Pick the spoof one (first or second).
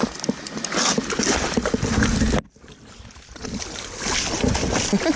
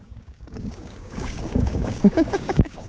second